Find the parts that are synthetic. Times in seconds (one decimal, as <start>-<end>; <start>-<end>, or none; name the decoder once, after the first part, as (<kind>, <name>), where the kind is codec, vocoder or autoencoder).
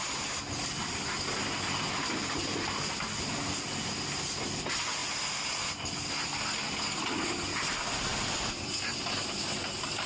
none